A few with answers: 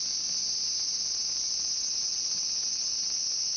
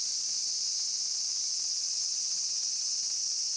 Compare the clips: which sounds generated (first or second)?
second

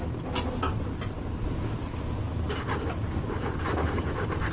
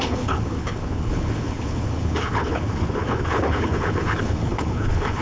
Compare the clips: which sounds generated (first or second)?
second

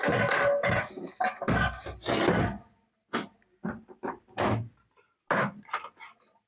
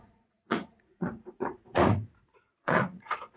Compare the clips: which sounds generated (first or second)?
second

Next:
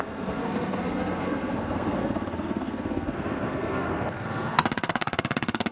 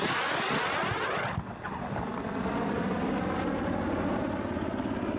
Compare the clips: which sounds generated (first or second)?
first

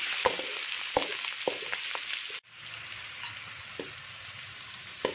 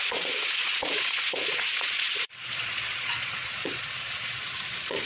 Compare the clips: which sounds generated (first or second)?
second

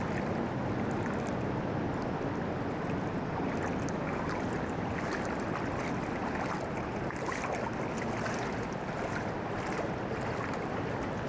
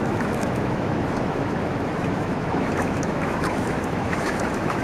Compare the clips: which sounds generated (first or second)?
second